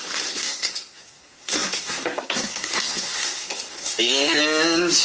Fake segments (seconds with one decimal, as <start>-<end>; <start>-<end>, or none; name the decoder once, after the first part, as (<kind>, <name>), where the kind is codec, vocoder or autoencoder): 0.0-4.4 (codec, SNAC)